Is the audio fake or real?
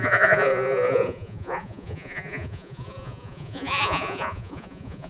fake